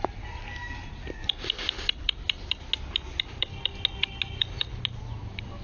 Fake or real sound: real